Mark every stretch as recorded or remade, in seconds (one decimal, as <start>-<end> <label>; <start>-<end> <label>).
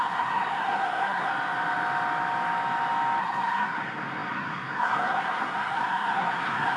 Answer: 0.0-1.3 remade; 1.3-3.2 recorded; 3.2-6.8 remade